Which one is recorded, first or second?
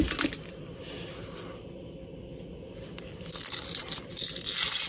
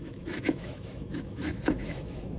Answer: first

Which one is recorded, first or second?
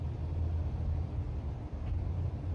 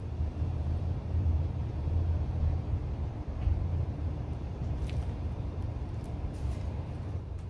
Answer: first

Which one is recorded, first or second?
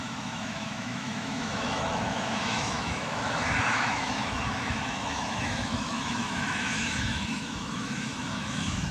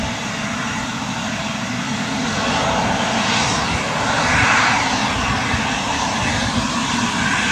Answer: second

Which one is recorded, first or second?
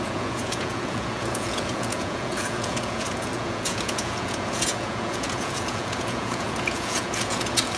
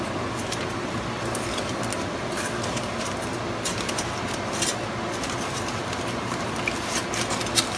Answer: second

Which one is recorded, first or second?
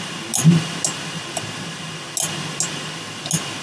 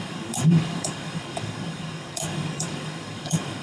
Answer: first